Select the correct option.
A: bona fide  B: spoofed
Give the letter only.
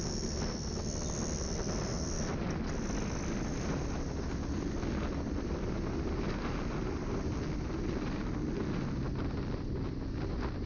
A